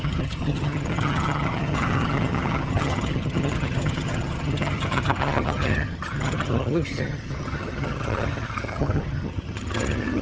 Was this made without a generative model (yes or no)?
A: no